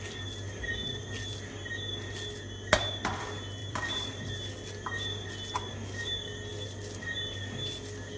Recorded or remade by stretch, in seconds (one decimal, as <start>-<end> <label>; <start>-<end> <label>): 0.0-3.6 recorded; 3.6-4.5 remade; 4.5-8.2 recorded